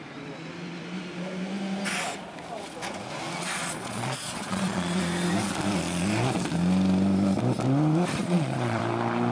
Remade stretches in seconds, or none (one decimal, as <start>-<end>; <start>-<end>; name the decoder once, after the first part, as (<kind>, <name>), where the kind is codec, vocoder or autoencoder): 3.6-5.0 (vocoder, Vocos); 8.2-8.8